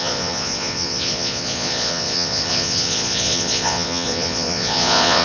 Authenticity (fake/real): fake